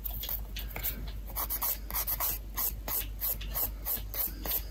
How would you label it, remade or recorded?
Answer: recorded